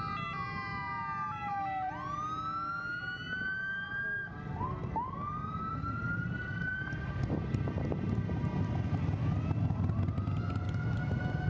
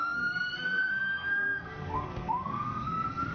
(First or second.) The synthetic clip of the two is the second